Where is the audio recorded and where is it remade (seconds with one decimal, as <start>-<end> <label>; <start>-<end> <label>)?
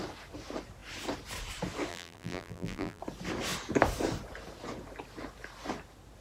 0.0-1.9 recorded; 1.9-3.0 remade; 3.0-6.2 recorded